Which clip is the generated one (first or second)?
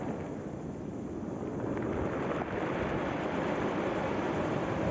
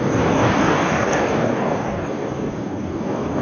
second